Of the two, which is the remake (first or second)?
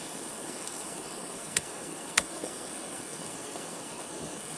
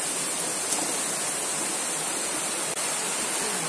first